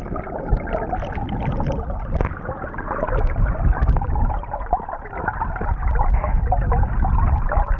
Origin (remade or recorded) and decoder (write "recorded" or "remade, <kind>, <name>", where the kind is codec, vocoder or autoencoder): recorded